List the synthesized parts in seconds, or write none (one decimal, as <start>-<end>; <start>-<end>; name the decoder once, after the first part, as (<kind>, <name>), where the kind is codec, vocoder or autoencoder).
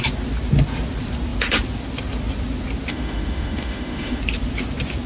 2.9-4.2 (autoencoder, DAC-VAE)